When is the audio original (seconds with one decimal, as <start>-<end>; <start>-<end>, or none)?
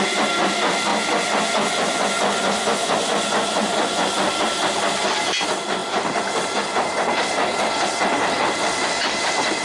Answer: 0.0-0.9; 4.1-9.6